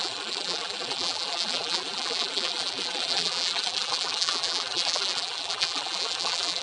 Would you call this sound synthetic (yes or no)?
yes